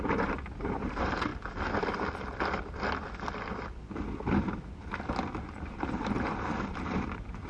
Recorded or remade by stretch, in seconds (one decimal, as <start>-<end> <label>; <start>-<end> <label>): 0.0-1.3 remade; 1.3-5.4 recorded; 5.4-7.5 remade